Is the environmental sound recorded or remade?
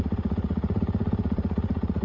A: remade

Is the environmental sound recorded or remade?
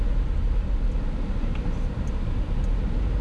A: recorded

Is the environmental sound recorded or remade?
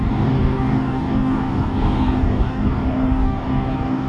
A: remade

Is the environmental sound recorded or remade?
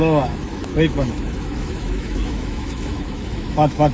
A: remade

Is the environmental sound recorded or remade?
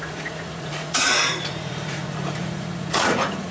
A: remade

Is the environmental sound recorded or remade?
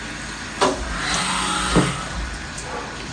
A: recorded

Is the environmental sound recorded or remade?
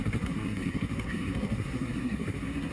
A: remade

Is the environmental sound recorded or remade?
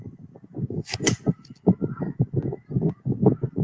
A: recorded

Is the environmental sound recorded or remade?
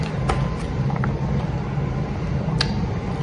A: recorded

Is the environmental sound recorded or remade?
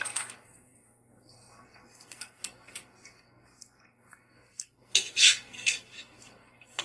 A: remade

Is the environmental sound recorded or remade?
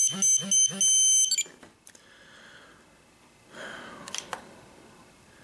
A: recorded